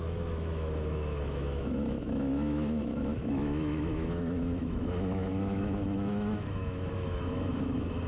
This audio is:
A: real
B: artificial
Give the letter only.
B